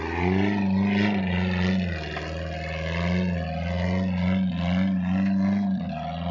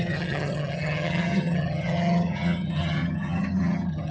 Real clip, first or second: first